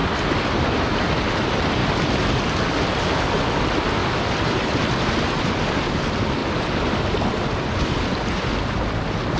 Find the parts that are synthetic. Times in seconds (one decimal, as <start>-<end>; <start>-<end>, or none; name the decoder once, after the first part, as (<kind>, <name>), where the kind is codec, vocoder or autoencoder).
0.0-1.3 (vocoder, BigVGAN v2); 1.8-3.6; 4.0-6.0; 6.4-7.6